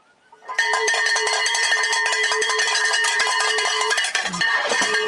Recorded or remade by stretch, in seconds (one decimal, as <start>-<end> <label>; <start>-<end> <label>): 0.0-5.1 remade